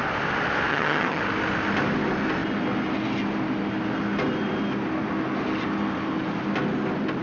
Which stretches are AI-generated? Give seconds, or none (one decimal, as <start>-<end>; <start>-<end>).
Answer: 0.7-1.2